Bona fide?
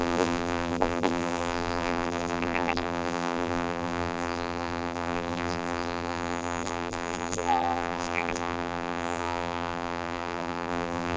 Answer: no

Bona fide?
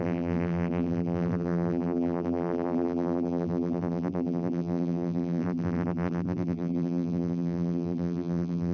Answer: no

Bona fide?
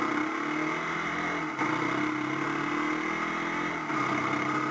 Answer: yes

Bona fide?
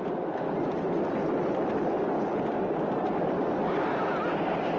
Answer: yes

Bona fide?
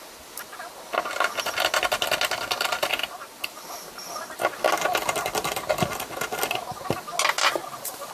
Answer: yes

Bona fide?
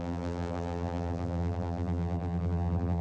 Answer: no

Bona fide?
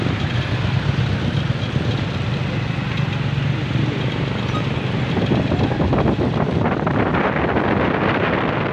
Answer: yes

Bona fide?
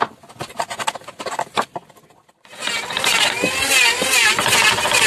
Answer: yes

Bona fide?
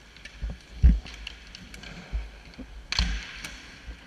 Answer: yes